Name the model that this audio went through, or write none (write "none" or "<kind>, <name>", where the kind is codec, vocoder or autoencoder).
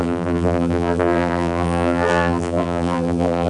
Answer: vocoder, BigVGAN v2